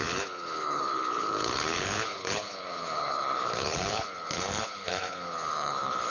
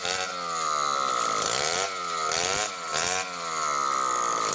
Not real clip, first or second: first